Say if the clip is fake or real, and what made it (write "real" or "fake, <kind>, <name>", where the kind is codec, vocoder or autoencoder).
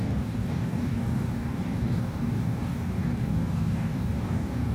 fake, codec, DAC